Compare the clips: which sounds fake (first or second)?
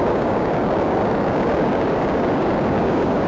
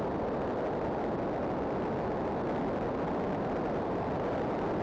first